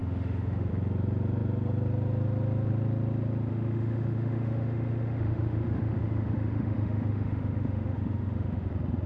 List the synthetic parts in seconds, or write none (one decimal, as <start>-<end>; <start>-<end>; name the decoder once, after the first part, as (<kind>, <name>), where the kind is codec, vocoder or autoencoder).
0.0-0.7 (autoencoder, DAC-VAE); 3.5-8.7